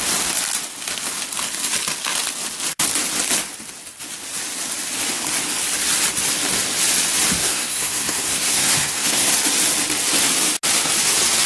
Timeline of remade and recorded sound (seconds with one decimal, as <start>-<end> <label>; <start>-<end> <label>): 0.0-7.4 recorded; 7.4-9.3 remade; 9.3-11.5 recorded